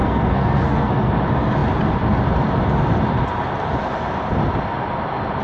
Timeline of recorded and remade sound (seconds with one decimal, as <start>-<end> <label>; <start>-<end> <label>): 0.0-1.1 remade; 1.1-5.4 recorded